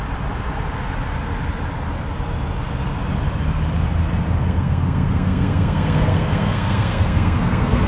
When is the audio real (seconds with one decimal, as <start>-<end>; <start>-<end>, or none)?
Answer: 0.0-4.4